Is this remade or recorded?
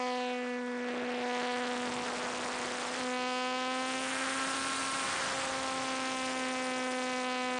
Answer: recorded